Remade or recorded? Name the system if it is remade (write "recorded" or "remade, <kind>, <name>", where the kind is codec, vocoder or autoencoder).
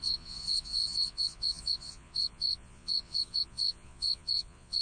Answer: remade, vocoder, Vocos